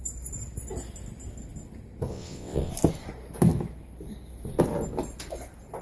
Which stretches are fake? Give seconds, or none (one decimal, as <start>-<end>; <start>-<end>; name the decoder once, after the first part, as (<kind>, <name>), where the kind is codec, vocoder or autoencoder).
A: 2.1-2.7 (vocoder, WaveNeXt)